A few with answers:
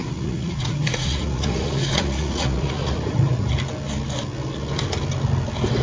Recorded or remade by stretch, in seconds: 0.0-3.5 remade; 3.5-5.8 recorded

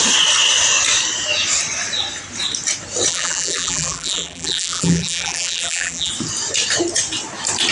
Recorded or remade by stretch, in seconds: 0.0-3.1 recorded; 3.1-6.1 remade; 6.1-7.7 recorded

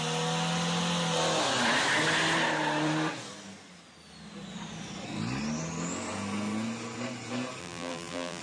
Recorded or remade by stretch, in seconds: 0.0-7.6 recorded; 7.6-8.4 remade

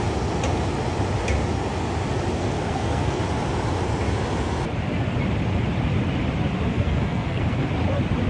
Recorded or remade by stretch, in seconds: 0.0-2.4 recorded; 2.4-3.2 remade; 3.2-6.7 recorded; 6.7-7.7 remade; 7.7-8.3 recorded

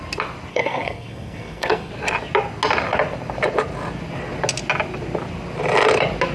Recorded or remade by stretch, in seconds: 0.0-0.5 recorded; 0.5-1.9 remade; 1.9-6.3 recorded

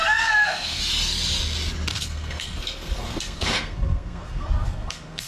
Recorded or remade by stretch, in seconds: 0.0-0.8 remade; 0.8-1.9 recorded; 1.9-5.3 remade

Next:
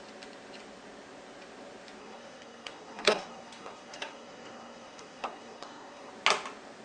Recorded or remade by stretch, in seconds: 0.0-2.0 recorded; 2.0-6.1 remade; 6.1-6.8 recorded

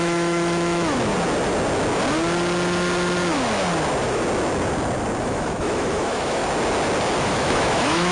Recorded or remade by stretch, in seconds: 0.0-1.1 remade; 1.1-5.2 recorded; 5.2-6.4 remade; 6.4-7.2 recorded; 7.2-8.1 remade